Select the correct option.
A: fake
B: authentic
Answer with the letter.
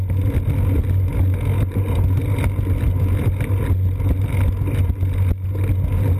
B